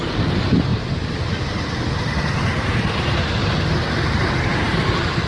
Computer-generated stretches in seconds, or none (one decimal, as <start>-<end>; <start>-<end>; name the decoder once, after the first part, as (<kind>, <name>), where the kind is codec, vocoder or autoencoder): 0.0-3.4 (vocoder, BigVGAN v2); 4.6-5.3